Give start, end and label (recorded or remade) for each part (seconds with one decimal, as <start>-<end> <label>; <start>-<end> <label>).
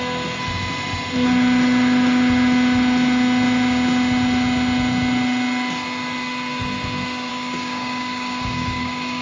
0.0-7.3 recorded; 7.3-9.2 remade